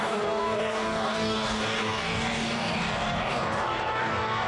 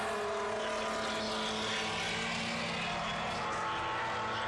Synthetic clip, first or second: first